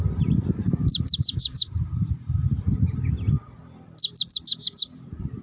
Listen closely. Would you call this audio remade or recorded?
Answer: remade